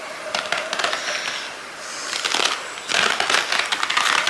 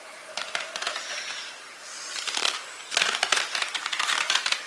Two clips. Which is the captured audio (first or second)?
first